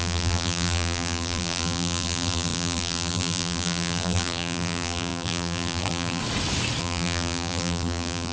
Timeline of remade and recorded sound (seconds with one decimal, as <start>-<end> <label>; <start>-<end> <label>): 0.0-6.2 remade; 6.2-6.8 recorded; 6.8-8.3 remade